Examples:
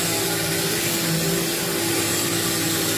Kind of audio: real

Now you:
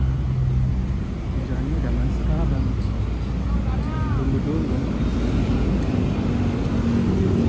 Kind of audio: real